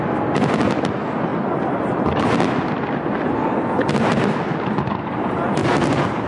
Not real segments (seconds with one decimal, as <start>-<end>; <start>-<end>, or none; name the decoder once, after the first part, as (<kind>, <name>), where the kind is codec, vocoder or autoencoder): none